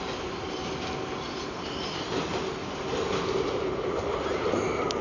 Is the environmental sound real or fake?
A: real